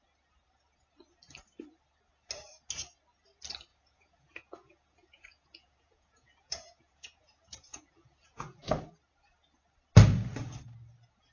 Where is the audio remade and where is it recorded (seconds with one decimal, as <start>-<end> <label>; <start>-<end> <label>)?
0.0-3.7 recorded; 3.7-8.8 remade; 8.8-11.3 recorded